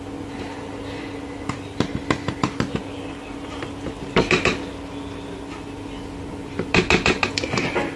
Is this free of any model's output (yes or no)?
yes